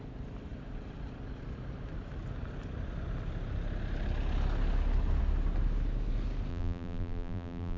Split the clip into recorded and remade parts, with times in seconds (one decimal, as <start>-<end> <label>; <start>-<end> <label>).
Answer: 0.0-6.5 recorded; 6.5-7.8 remade